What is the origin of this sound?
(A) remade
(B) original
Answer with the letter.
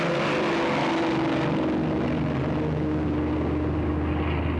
B